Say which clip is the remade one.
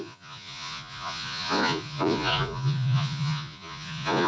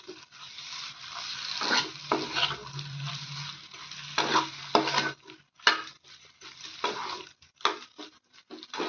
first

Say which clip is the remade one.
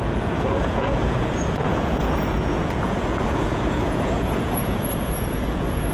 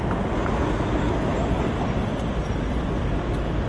first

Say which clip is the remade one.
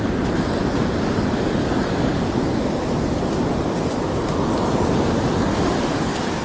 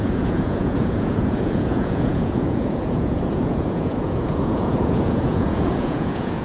second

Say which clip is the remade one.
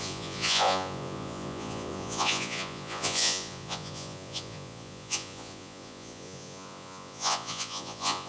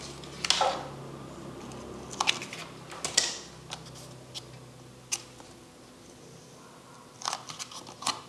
first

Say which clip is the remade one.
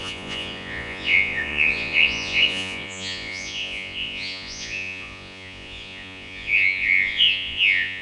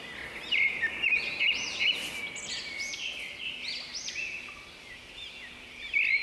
first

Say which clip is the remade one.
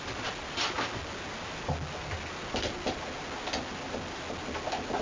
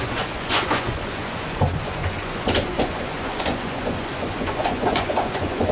second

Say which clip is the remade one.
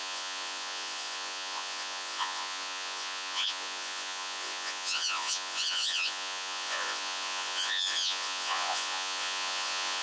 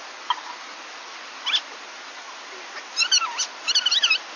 first